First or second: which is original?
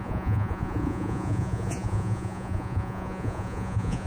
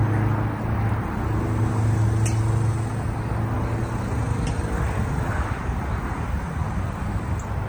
second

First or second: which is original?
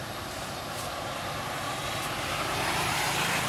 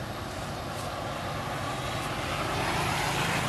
second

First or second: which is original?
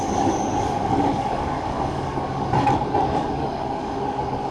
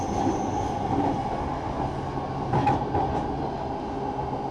second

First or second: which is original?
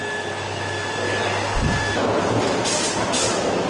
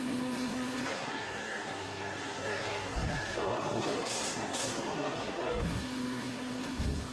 first